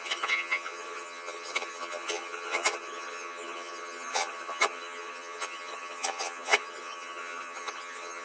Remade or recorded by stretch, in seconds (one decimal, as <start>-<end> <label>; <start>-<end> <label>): 0.0-8.2 remade